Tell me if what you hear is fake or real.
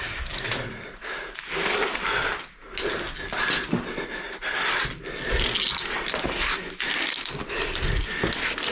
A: real